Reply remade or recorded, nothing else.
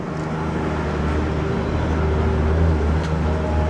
recorded